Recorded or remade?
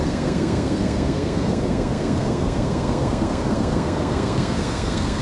remade